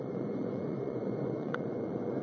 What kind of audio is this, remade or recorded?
remade